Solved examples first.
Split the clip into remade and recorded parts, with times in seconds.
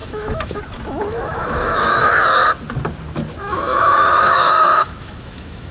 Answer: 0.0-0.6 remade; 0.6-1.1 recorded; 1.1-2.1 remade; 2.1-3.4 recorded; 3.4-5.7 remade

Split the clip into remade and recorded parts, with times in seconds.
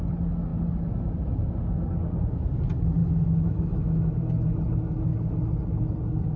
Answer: 0.0-3.0 recorded; 3.0-4.1 remade; 4.1-6.4 recorded